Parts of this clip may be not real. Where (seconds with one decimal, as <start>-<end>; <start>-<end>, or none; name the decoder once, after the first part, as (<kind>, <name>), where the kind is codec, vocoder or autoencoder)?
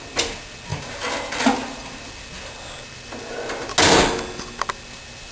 none